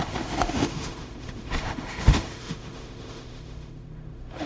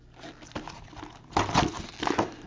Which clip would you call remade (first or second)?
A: first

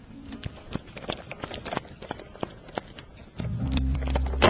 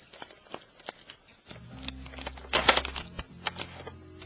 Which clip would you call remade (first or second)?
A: first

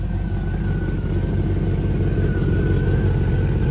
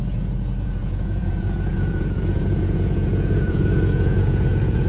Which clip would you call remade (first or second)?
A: second